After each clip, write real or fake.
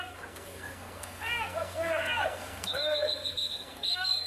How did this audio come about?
fake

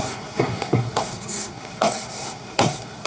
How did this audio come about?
fake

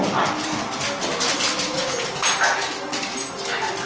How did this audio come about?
real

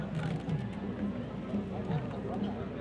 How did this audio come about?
real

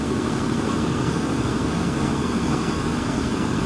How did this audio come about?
fake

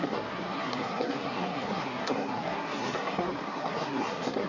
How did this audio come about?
fake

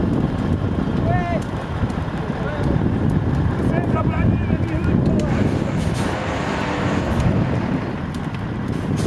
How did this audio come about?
real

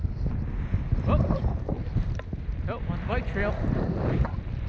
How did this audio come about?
real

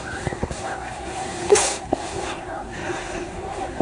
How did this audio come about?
fake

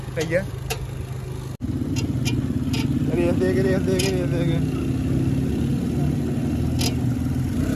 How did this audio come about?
real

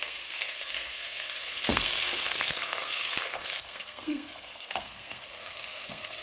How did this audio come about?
fake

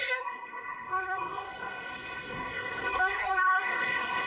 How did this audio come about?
fake